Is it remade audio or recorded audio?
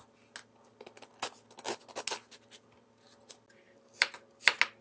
recorded